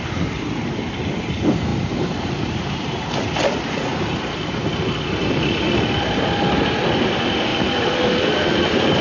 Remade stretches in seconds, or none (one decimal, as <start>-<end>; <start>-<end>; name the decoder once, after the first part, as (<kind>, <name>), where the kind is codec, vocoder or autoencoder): 1.7-3.2 (vocoder, BigVGAN v2); 7.5-9.0

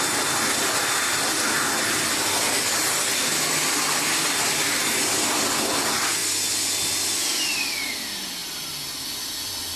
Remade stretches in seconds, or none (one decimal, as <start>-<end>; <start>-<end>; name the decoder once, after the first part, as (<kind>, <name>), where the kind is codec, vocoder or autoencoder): none

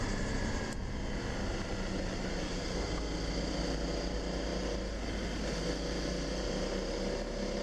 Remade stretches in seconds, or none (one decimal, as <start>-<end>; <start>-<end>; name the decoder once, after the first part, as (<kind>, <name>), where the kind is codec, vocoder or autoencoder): none